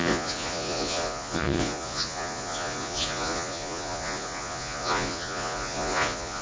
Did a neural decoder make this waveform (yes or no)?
yes